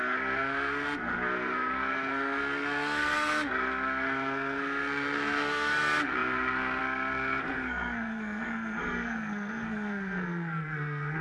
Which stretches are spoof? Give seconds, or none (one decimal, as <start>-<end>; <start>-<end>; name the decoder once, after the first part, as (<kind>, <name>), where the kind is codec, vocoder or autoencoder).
0.0-11.2 (codec, SNAC)